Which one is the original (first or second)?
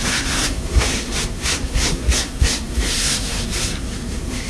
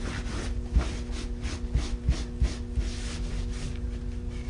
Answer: second